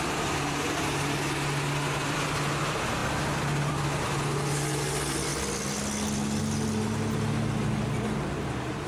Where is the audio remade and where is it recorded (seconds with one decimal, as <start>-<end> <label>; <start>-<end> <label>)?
0.0-8.9 recorded